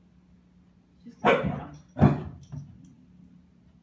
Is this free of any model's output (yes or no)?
yes